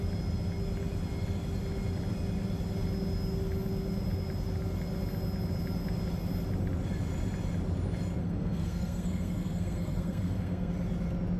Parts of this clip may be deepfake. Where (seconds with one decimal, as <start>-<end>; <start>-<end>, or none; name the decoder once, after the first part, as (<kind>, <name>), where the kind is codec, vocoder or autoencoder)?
8.2-10.7 (codec, SNAC)